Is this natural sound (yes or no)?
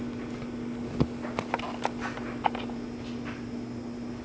yes